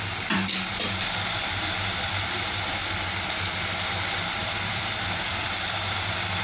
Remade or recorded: remade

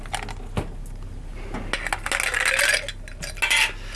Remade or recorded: recorded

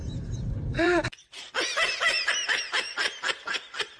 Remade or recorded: remade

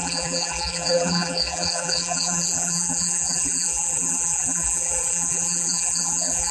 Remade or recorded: remade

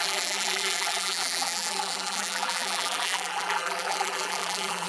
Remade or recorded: remade